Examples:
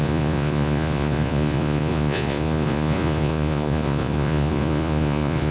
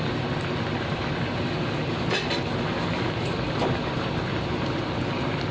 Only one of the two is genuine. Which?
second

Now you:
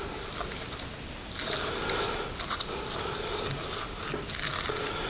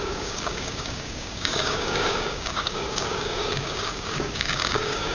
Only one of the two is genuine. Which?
first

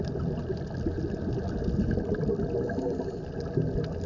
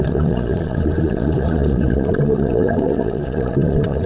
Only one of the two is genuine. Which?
first